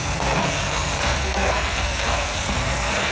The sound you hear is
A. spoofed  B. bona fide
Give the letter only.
A